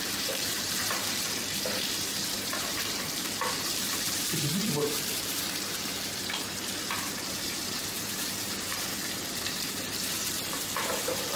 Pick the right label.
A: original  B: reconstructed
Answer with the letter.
B